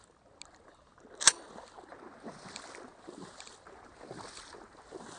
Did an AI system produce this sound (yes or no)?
no